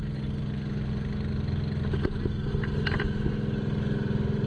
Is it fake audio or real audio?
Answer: real